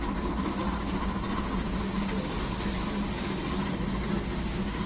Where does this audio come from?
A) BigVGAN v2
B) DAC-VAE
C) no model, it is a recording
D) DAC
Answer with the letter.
C